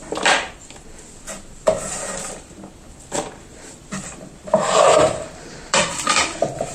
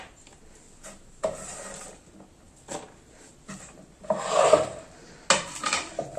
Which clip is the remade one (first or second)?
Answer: first